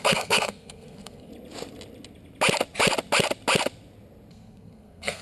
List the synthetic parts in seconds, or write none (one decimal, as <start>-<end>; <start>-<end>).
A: 0.0-1.3; 4.3-5.2